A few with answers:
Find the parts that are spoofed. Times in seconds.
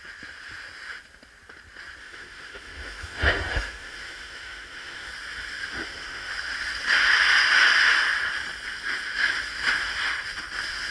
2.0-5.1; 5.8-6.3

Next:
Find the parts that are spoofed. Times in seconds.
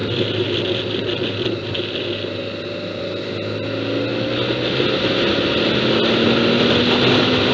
none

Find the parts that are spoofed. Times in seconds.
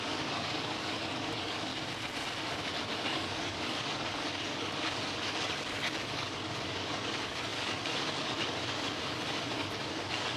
0.0-1.7; 2.9-10.4